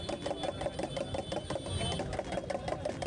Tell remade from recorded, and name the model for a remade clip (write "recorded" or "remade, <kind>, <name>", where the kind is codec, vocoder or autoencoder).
recorded